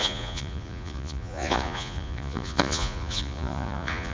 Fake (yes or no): yes